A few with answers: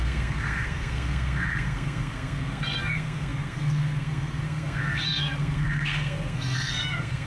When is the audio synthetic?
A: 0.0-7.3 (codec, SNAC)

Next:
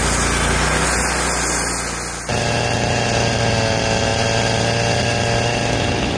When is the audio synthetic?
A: none

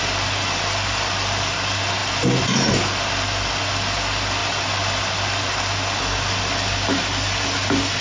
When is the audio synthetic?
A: none

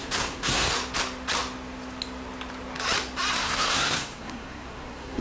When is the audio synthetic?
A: 0.0-0.7 (codec, SNAC); 3.4-5.2

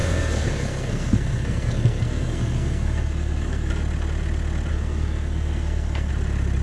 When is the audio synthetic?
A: 0.0-3.7 (codec, SNAC); 4.7-6.1

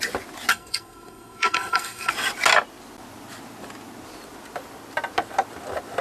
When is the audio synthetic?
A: 0.5-2.1 (codec, SNAC)

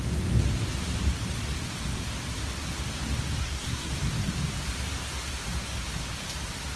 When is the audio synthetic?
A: 3.4-3.9 (codec, SNAC)

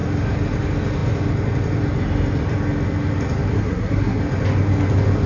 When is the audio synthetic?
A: 3.5-4.2 (codec, SNAC)